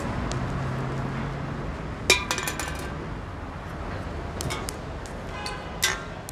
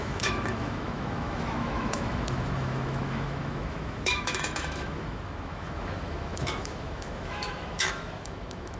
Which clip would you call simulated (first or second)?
second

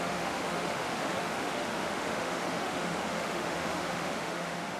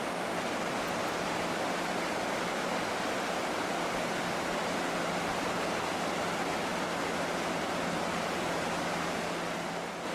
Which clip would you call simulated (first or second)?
first